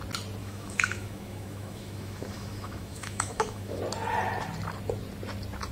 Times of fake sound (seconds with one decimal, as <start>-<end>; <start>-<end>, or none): 0.4-3.8